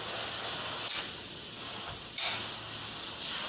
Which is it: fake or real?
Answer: real